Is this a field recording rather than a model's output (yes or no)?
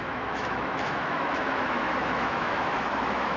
no